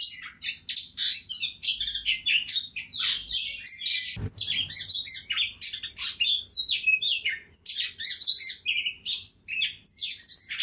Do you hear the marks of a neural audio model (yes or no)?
no